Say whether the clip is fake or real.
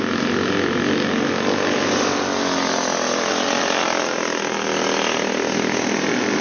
real